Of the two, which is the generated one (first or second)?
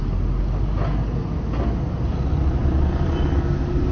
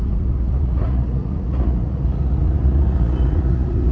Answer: second